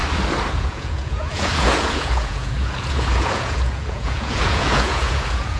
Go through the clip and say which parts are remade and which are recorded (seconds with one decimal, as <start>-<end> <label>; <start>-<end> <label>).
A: 0.0-0.5 recorded; 0.5-5.6 remade